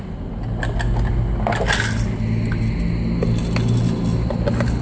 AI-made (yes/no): no